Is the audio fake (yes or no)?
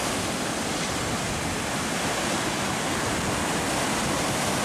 no